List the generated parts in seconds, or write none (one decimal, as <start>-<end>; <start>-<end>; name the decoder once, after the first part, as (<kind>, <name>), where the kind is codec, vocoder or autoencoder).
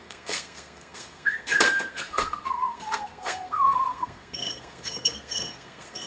0.0-6.1 (codec, SNAC)